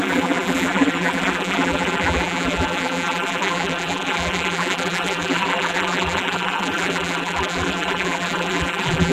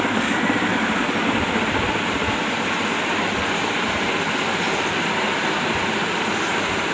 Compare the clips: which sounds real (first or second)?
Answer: second